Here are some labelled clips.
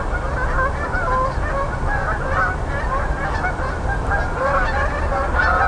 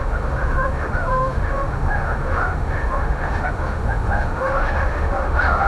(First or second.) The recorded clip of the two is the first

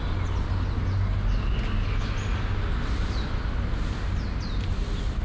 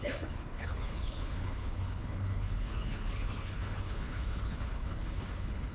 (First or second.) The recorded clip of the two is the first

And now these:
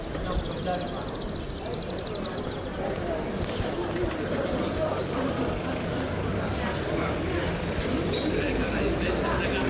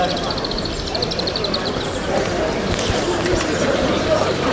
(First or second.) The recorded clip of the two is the first